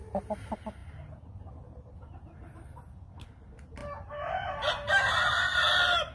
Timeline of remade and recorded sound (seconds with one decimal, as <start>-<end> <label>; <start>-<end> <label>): 0.0-6.1 recorded